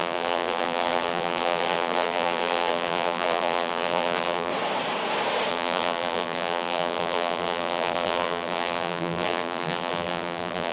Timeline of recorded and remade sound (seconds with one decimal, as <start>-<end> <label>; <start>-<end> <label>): 0.0-4.5 remade; 4.5-5.5 recorded; 5.5-10.7 remade